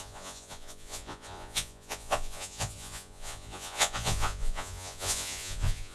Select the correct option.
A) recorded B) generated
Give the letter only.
B